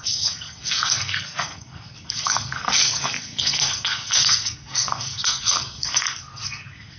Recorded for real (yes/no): no